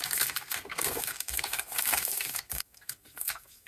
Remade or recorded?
remade